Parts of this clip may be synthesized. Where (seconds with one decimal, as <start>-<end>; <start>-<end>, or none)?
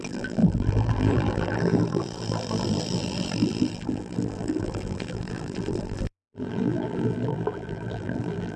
0.0-8.6